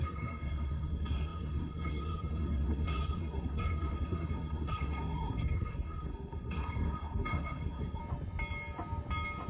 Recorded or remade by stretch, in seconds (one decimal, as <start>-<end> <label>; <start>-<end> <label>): 0.0-8.0 remade; 8.0-9.5 recorded